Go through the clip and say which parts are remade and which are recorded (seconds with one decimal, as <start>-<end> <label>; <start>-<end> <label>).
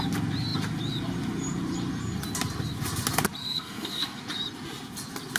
0.0-3.4 recorded; 3.4-4.2 remade; 4.2-5.4 recorded